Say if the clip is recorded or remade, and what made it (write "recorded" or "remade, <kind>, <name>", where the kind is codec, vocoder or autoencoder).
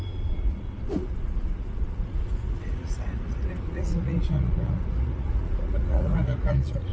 remade, vocoder, Vocos